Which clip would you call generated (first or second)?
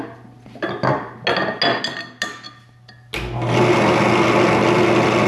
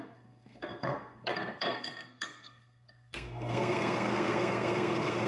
second